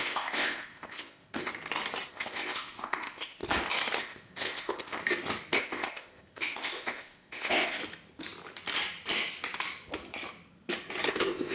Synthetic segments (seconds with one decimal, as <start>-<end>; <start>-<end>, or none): 0.0-1.5; 2.1-3.4; 4.0-5.0; 5.6-7.8; 11.1-11.5